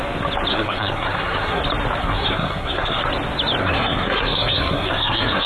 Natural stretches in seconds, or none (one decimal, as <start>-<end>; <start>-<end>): 0.0-0.5; 1.6-2.0; 3.0-3.6